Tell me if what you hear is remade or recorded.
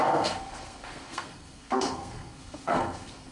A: remade